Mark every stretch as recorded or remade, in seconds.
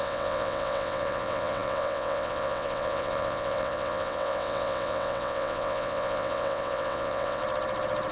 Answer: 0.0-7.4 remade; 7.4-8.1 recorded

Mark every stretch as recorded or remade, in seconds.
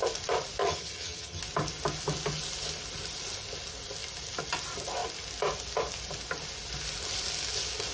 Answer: 0.0-0.6 recorded; 0.6-1.4 remade; 1.4-7.9 recorded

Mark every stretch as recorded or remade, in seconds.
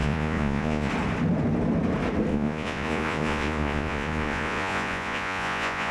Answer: 0.0-0.9 remade; 0.9-2.3 recorded; 2.3-5.9 remade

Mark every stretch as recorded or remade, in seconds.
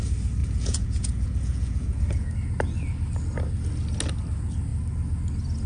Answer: 0.0-0.4 recorded; 0.4-2.3 remade; 2.3-5.7 recorded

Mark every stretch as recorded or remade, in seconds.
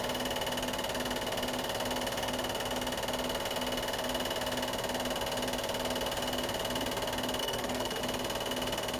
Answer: 0.0-7.4 recorded; 7.4-8.0 remade; 8.0-9.0 recorded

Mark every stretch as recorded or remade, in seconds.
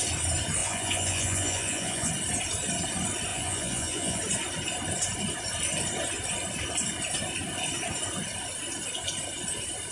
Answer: 0.0-0.6 recorded; 0.6-2.1 remade; 2.1-3.3 recorded; 3.3-4.2 remade; 4.2-9.9 recorded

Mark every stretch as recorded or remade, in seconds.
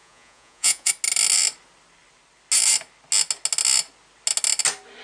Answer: 0.0-0.9 remade; 0.9-5.0 recorded